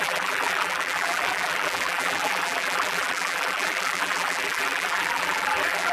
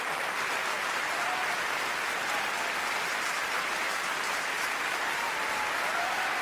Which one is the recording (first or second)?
second